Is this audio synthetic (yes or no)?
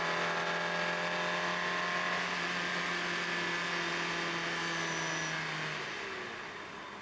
no